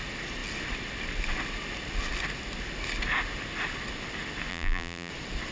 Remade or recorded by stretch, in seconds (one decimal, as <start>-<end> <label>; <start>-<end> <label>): 0.0-4.5 recorded; 4.5-5.1 remade; 5.1-5.5 recorded